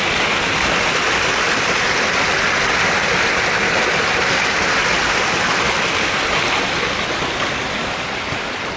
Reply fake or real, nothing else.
real